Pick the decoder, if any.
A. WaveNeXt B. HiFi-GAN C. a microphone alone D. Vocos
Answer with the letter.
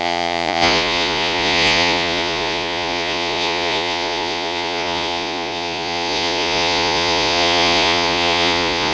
D